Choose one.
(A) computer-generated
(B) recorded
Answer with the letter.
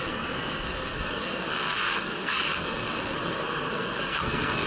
A